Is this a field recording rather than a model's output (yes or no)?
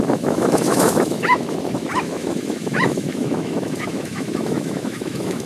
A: no